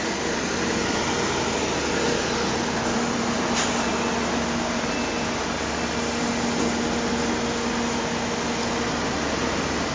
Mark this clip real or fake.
real